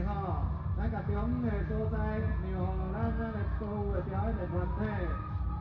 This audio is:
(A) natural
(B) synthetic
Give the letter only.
A